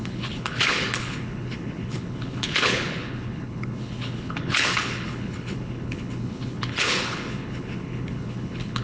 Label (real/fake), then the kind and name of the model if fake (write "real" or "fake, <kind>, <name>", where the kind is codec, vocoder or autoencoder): fake, codec, HILCodec